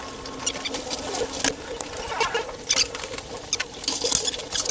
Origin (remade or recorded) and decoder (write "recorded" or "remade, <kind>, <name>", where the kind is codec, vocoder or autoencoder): recorded